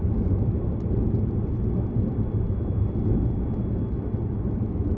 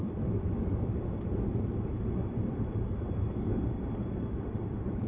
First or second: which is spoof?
second